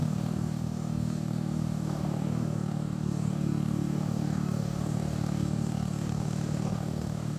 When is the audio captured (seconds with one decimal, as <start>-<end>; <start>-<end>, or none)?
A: none